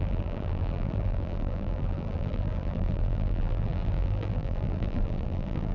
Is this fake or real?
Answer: fake